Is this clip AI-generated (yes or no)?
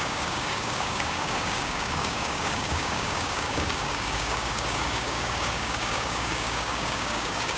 yes